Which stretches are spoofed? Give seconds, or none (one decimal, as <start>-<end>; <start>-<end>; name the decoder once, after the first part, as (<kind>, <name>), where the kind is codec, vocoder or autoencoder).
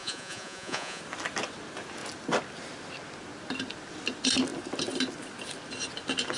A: 0.0-1.0 (vocoder, Vocos)